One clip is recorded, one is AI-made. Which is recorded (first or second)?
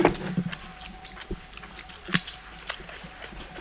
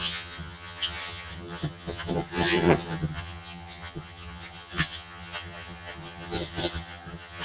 first